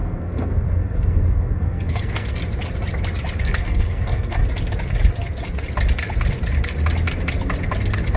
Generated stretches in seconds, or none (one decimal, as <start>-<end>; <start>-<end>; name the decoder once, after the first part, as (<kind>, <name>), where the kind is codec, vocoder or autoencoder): 0.0-2.4 (codec, SNAC); 3.4-4.4